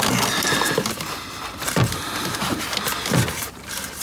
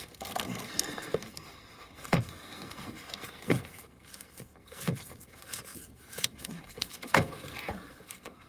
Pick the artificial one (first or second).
second